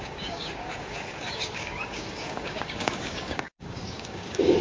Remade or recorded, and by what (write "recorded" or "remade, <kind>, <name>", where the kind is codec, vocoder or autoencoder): remade, codec, DAC